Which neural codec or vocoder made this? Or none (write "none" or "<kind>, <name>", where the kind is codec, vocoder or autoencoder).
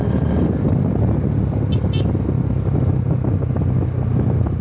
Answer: none